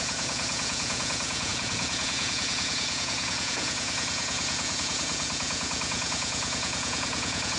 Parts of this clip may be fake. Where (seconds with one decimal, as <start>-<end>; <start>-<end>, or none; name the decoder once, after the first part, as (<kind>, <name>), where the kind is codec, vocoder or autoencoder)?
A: 0.0-7.6 (vocoder, Vocos)